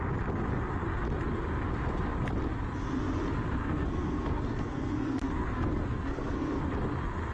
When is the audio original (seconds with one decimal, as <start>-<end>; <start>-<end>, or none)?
0.0-3.6; 6.6-7.3